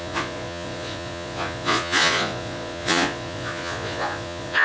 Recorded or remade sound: remade